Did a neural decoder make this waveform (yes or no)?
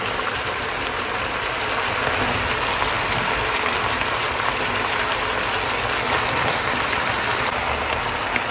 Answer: no